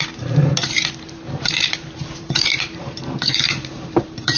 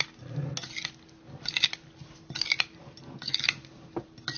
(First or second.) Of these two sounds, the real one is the second